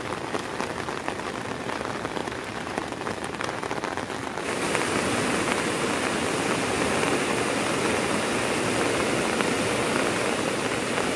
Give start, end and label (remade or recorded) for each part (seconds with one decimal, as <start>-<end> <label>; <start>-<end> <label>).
0.0-2.2 recorded; 2.2-3.7 remade; 3.7-11.2 recorded

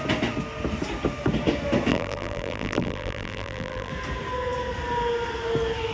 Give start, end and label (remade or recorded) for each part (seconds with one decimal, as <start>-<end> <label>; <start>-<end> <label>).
0.0-1.9 recorded; 1.9-3.9 remade; 3.9-5.9 recorded

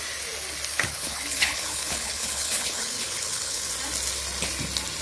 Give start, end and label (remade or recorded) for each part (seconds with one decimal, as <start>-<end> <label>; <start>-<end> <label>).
0.0-0.7 recorded; 0.7-3.7 remade; 3.7-5.0 recorded

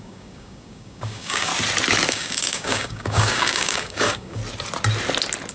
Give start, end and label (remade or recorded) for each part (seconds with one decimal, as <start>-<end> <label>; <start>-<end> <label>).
0.0-1.5 remade; 1.5-2.1 recorded; 2.1-4.4 remade; 4.4-5.5 recorded

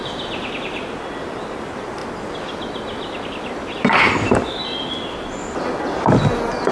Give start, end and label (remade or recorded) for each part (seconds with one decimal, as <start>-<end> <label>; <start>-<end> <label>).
0.0-6.7 recorded

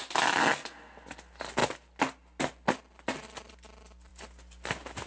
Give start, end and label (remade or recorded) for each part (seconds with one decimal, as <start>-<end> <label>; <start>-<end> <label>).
0.0-5.1 recorded

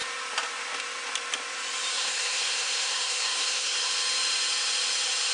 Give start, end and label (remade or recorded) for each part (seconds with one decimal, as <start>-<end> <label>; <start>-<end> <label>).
0.0-1.9 recorded; 1.9-3.9 remade; 3.9-5.3 recorded